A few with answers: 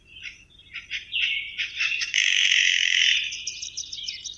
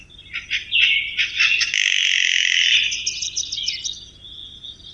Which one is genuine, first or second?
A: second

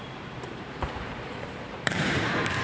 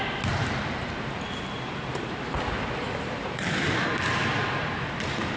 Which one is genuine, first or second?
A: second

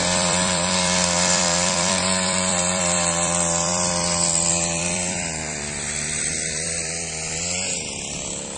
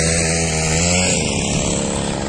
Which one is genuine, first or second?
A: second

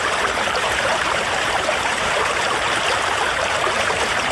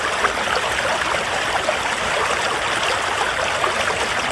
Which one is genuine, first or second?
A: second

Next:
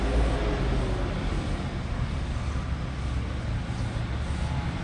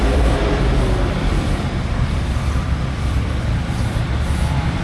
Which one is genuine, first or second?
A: first